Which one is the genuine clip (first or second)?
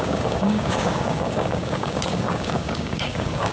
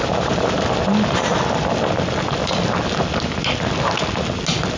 second